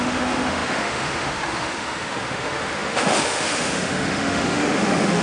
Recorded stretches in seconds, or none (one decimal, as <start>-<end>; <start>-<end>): none